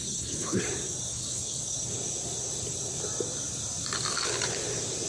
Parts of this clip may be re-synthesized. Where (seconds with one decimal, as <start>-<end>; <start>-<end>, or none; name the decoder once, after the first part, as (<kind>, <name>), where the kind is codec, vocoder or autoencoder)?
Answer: 0.0-0.6 (codec, HILCodec); 1.1-1.6